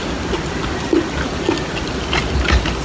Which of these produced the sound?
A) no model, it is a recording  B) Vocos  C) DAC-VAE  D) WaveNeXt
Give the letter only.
A